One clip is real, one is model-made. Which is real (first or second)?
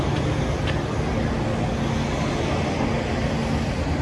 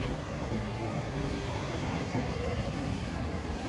first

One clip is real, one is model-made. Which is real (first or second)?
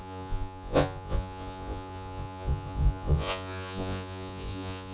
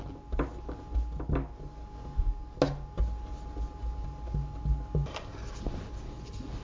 second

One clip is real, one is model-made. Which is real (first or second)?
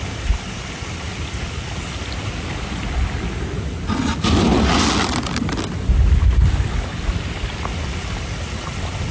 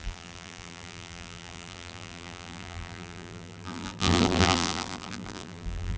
first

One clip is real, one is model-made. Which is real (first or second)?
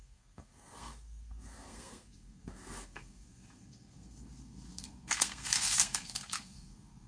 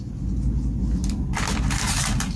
second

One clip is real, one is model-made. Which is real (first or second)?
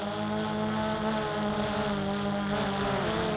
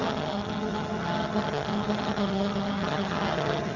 first